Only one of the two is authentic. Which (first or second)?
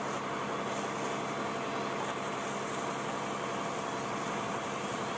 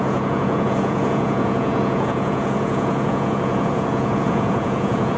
first